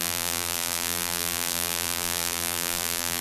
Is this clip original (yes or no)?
no